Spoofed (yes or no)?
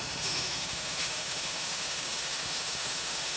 yes